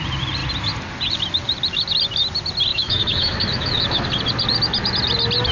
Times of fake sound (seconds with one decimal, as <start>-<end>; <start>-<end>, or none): 2.7-4.1